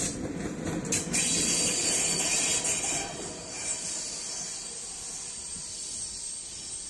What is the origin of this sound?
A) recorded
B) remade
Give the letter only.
A